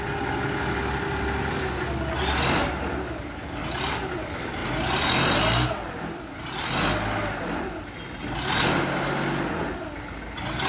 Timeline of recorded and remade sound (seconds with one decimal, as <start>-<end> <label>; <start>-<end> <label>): 0.0-10.7 recorded